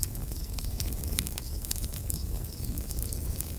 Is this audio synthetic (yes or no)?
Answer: yes